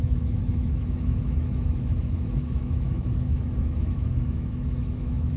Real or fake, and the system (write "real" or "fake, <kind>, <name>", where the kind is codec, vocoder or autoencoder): fake, autoencoder, DAC-VAE